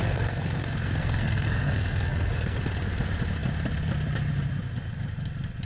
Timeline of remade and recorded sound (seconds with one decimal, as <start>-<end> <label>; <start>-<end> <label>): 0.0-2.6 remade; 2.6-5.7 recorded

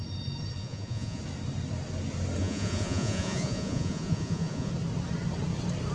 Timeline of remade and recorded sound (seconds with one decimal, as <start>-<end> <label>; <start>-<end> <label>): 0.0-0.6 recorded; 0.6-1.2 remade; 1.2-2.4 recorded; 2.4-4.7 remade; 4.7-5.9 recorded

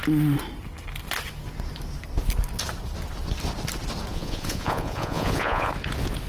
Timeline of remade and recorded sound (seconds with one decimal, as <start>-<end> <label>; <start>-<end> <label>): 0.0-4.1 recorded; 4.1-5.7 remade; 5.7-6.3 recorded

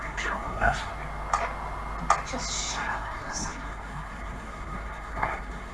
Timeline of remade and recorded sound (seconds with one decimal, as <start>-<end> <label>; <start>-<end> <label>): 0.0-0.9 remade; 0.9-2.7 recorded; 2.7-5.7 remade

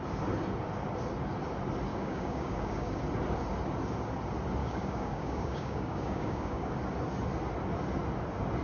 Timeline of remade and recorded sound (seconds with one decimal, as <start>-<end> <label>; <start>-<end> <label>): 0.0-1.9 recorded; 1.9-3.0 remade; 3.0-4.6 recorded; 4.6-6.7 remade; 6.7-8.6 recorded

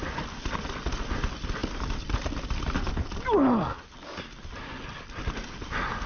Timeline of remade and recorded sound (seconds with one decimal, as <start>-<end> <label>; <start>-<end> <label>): 0.0-1.6 recorded; 1.6-2.9 remade; 2.9-6.1 recorded

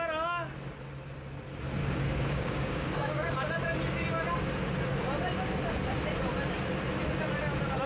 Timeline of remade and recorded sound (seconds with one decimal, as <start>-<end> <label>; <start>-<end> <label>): 0.0-1.8 recorded; 1.8-3.3 remade; 3.3-7.9 recorded

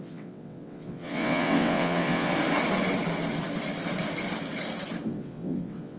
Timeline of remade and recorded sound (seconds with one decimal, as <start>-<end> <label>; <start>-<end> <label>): 0.0-2.3 remade; 2.3-5.1 recorded; 5.1-6.0 remade